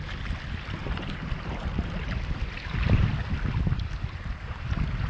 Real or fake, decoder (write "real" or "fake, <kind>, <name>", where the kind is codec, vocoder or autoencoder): real